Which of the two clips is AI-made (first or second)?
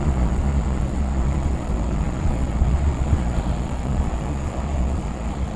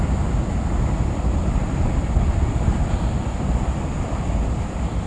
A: first